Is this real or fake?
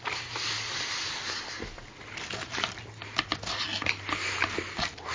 real